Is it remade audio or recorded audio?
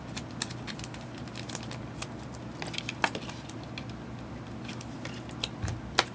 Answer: recorded